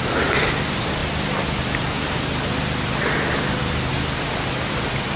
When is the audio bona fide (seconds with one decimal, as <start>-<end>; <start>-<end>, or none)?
0.0-5.2